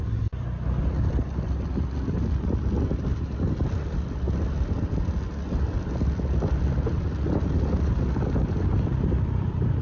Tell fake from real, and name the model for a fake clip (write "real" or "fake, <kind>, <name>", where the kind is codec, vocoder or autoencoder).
real